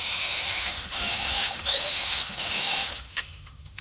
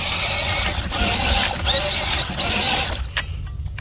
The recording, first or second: second